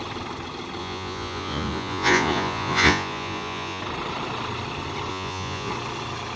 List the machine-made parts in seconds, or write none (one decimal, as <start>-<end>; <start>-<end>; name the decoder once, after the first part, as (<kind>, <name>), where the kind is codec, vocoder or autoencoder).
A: 0.8-3.8 (vocoder, Vocos); 5.1-5.7